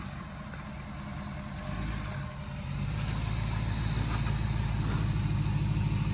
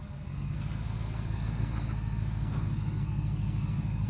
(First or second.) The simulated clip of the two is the second